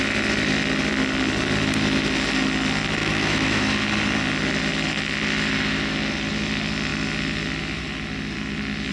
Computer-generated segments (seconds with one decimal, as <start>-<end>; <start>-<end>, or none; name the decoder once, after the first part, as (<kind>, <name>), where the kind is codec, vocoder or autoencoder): 3.0-3.6 (autoencoder, DAC-VAE)